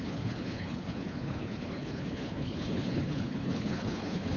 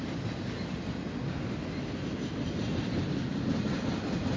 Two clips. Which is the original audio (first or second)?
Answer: second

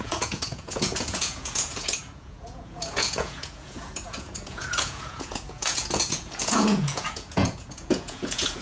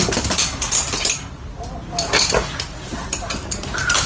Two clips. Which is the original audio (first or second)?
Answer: second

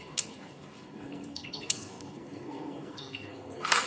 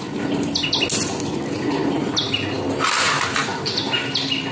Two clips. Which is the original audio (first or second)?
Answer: second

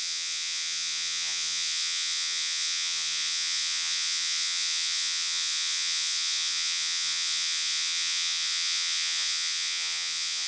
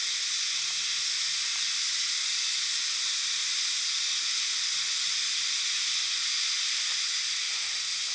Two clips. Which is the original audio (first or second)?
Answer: second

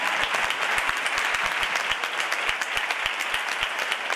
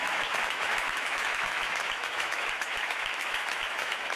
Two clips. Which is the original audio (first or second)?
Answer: first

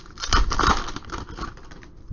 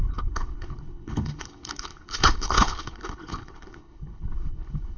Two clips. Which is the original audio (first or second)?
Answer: first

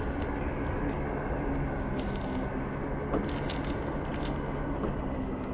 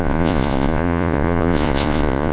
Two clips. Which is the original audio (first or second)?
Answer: first